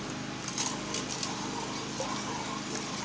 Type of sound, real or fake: real